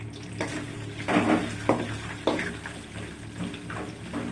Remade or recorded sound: recorded